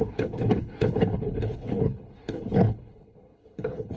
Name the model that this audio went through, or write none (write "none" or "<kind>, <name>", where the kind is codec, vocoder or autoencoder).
codec, HILCodec